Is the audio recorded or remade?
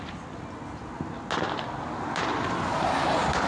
recorded